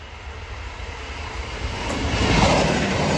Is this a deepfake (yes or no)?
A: no